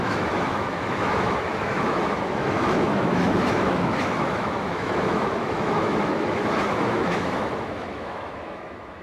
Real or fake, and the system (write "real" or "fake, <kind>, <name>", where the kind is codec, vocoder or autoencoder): fake, autoencoder, DAC-VAE